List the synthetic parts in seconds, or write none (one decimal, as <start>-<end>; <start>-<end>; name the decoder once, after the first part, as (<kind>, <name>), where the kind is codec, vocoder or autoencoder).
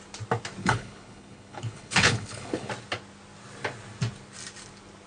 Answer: 0.6-2.7 (codec, HILCodec)